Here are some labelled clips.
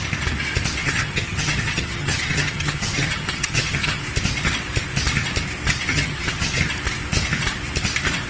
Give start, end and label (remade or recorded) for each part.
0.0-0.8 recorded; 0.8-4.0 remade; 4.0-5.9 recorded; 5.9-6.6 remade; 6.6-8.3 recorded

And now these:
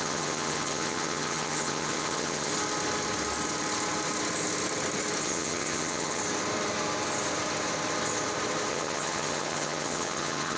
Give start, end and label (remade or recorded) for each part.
0.0-2.5 remade; 2.5-5.2 recorded; 5.2-6.2 remade; 6.2-8.7 recorded; 8.7-10.6 remade

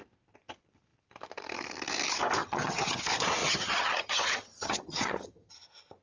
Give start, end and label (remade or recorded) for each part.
0.0-2.4 recorded; 2.4-3.0 remade; 3.0-3.4 recorded; 3.4-5.5 remade; 5.5-6.0 recorded

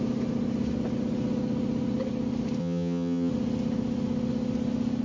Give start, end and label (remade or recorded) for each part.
0.0-2.6 recorded; 2.6-3.3 remade; 3.3-5.0 recorded

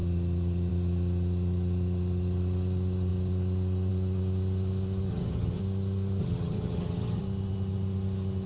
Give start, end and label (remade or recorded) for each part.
0.0-5.1 recorded; 5.1-5.6 remade; 5.6-6.2 recorded; 6.2-7.2 remade; 7.2-8.5 recorded

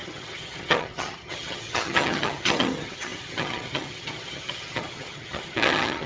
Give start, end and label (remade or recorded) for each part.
0.0-6.1 remade

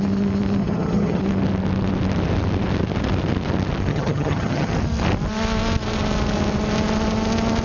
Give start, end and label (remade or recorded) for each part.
0.0-0.6 recorded; 0.6-1.2 remade; 1.2-3.9 recorded; 3.9-4.7 remade; 4.7-7.6 recorded

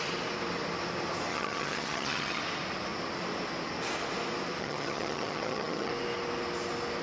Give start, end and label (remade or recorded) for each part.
0.0-1.3 recorded; 1.3-2.4 remade; 2.4-4.6 recorded; 4.6-5.9 remade; 5.9-7.0 recorded